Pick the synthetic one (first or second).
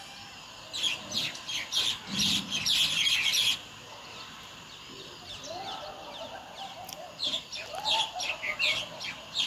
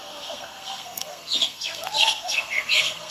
second